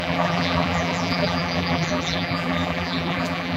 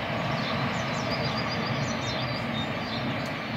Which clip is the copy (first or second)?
first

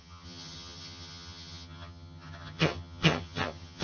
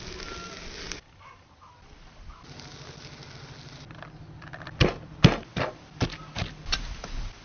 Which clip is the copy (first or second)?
first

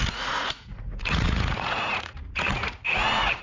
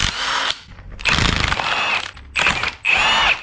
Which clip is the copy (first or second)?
first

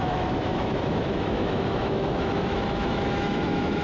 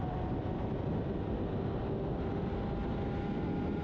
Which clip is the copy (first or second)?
first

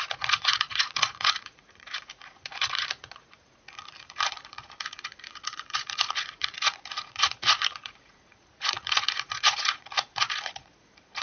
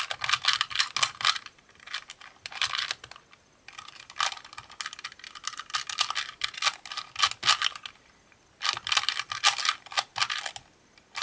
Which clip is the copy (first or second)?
first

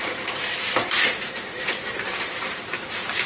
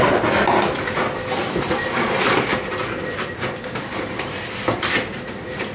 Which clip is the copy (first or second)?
first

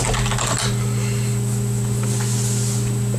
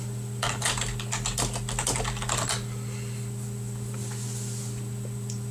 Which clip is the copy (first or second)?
second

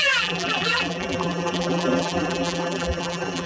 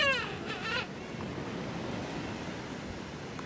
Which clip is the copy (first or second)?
first